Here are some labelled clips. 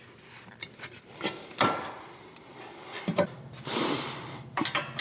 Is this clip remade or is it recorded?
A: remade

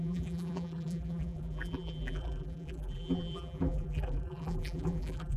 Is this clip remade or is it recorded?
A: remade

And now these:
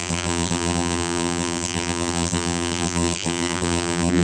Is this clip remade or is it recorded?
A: remade